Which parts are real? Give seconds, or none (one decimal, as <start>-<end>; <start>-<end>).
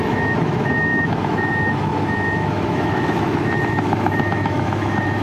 none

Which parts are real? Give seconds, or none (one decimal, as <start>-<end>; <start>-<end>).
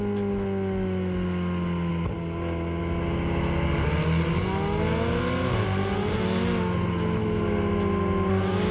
0.0-8.7